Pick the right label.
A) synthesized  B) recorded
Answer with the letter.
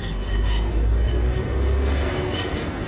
A